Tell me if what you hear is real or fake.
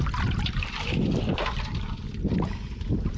real